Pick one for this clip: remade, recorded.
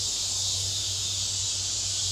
recorded